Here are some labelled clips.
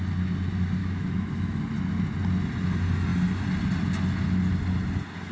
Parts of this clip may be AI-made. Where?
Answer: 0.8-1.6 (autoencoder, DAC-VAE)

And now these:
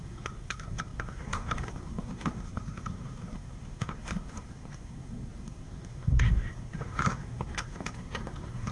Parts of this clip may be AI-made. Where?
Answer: 0.0-8.7 (codec, SNAC)

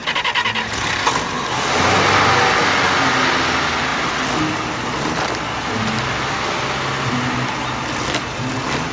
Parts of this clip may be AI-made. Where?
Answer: none